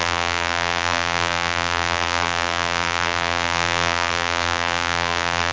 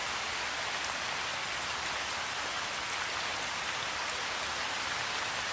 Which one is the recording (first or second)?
second